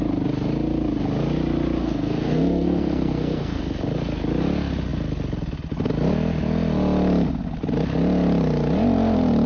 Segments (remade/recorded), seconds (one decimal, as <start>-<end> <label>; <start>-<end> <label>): 0.0-1.8 recorded; 1.8-3.6 remade; 3.6-9.5 recorded